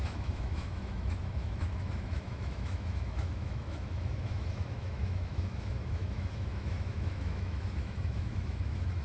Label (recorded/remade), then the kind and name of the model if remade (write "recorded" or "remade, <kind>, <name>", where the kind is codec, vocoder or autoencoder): remade, autoencoder, DAC-VAE